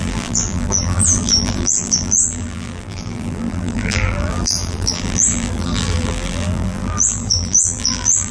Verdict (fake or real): fake